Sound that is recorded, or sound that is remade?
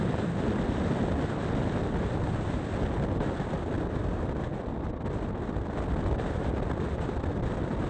recorded